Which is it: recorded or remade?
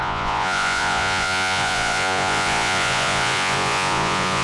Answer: remade